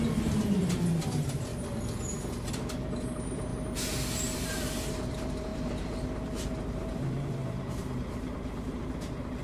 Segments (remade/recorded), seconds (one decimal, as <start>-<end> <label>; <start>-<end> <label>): 0.0-1.5 remade; 1.5-2.5 recorded; 2.5-3.5 remade; 3.5-4.4 recorded; 4.4-9.4 remade